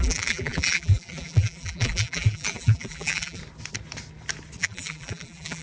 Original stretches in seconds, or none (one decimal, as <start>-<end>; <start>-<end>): 3.4-4.6